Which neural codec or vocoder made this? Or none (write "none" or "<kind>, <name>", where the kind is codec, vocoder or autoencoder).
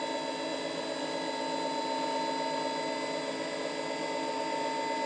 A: none